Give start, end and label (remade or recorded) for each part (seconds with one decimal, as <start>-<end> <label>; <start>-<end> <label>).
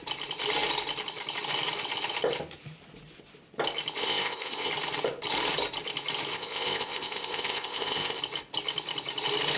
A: 0.0-4.0 recorded; 4.0-4.7 remade; 4.7-6.3 recorded; 6.3-8.2 remade; 8.2-9.6 recorded